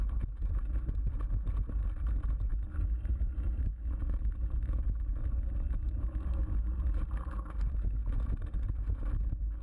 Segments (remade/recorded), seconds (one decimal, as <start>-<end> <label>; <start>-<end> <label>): 0.0-9.6 recorded